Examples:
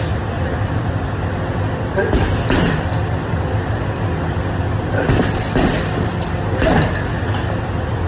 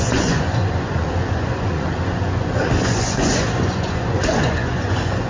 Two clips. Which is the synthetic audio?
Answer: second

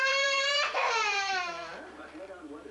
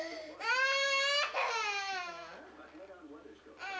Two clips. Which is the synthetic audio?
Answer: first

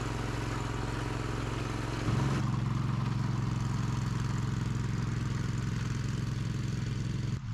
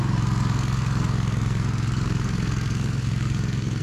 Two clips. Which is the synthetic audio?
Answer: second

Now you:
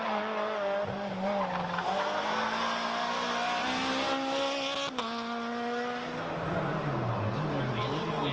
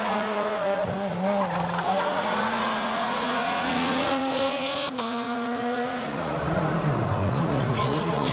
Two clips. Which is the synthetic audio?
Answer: second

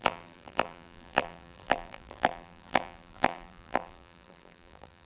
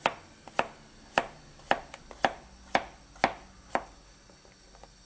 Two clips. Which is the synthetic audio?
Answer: first